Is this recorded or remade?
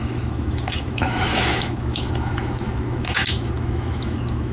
remade